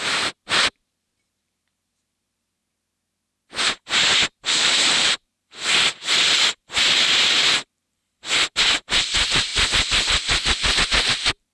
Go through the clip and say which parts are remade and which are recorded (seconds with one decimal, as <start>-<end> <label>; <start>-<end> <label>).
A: 0.0-2.6 remade; 2.6-4.4 recorded; 4.4-9.5 remade; 9.5-10.9 recorded; 10.9-11.5 remade